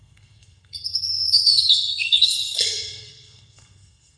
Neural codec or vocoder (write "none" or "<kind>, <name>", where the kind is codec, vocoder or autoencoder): codec, SNAC